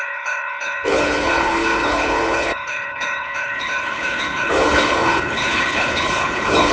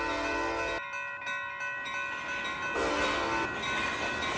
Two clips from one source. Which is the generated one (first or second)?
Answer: first